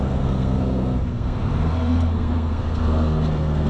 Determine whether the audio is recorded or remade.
remade